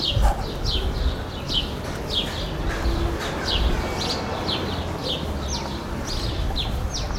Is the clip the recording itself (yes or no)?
yes